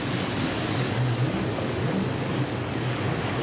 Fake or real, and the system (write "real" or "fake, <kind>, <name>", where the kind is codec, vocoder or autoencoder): fake, codec, DAC